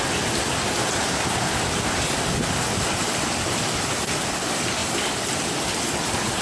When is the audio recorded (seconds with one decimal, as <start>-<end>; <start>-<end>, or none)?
0.0-4.8; 5.4-6.4